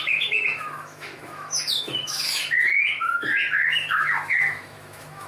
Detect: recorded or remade remade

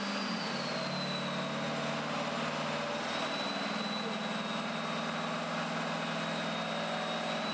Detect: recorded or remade recorded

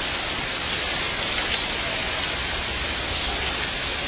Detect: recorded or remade recorded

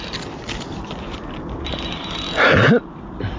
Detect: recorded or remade recorded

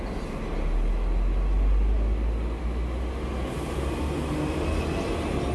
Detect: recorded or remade recorded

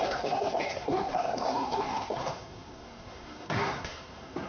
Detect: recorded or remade remade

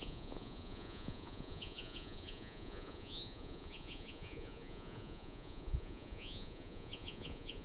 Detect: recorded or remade remade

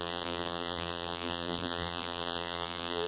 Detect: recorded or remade remade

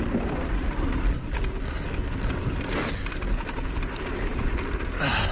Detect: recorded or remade recorded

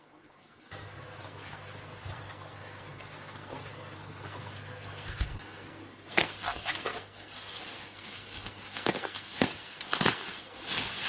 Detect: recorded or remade remade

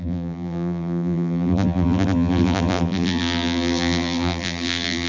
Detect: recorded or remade remade